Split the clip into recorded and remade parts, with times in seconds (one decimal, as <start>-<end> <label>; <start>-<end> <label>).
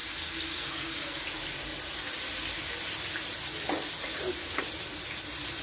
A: 0.0-1.2 remade; 1.2-5.6 recorded